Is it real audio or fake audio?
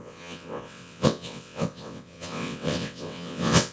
fake